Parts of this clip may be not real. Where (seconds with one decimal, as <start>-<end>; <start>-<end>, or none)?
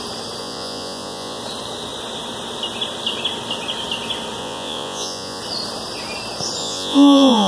0.4-1.4; 4.4-5.4; 6.6-7.5